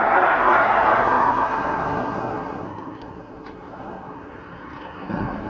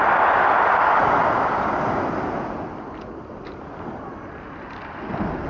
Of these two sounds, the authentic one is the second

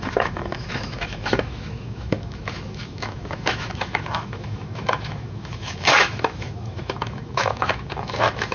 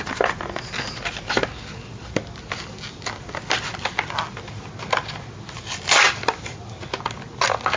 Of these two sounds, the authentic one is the second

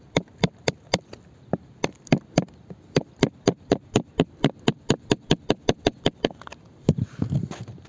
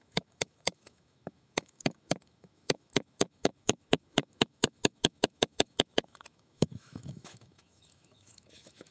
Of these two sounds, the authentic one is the first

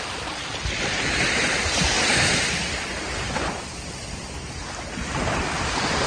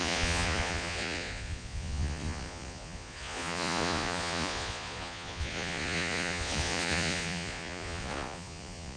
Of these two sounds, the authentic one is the first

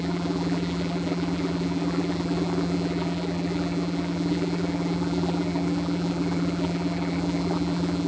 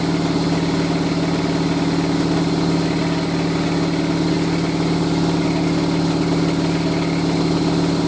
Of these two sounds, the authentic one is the second